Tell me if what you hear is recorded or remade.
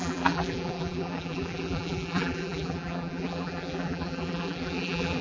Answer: remade